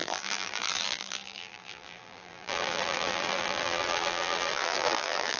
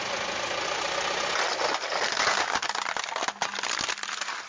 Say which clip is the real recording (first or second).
second